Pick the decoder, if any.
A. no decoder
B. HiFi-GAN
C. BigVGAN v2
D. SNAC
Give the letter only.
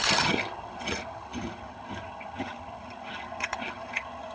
B